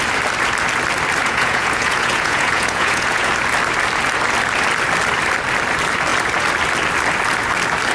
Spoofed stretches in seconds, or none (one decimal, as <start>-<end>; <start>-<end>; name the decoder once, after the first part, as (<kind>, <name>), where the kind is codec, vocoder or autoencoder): 1.2-3.3 (vocoder, Vocos)